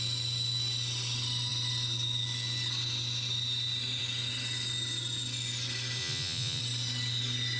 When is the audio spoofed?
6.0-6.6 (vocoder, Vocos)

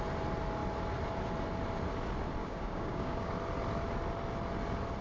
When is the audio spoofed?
2.4-3.3 (codec, DAC)

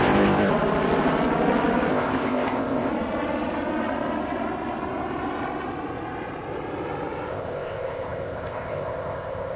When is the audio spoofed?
0.0-0.5 (codec, ZipCodec); 1.9-2.9; 7.3-9.6

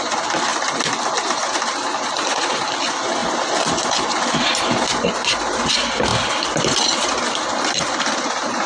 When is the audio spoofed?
0.0-0.5 (vocoder, BigVGAN v2); 2.5-8.7

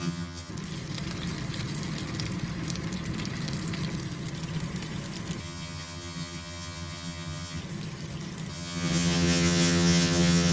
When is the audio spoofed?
0.0-0.5 (vocoder, HiFi-GAN); 5.4-7.6; 8.5-10.5

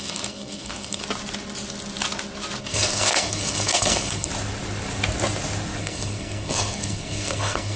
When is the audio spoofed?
0.0-1.0 (codec, SNAC); 2.6-4.3; 5.8-7.8

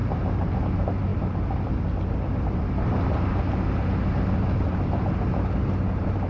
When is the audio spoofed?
0.0-0.6 (vocoder, BigVGAN v2)